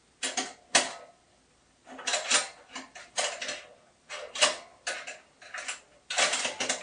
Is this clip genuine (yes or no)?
yes